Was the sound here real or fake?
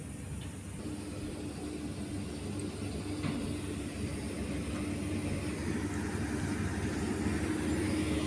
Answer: real